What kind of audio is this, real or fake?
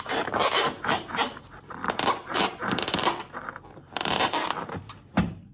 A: fake